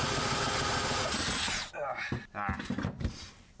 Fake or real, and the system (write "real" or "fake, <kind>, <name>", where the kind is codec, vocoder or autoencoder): real